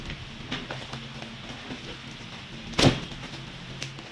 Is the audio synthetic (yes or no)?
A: no